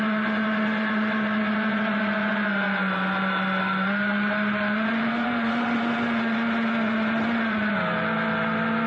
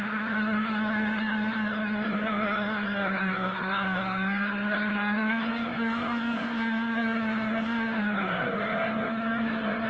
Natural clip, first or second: first